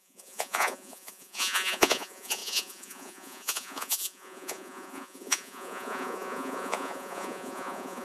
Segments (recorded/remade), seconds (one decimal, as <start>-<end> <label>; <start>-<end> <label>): 0.0-8.0 remade